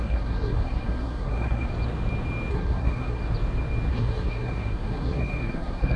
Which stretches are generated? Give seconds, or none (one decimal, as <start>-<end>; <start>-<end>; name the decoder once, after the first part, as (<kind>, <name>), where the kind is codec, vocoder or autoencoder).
0.0-1.7 (codec, SNAC); 2.5-3.2; 3.9-6.0